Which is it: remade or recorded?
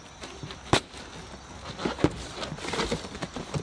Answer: recorded